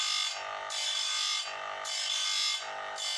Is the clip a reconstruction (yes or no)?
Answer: no